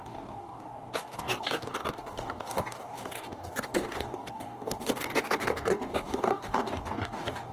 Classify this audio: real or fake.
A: fake